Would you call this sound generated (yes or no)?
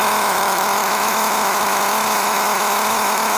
yes